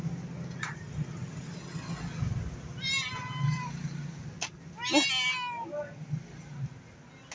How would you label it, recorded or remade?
recorded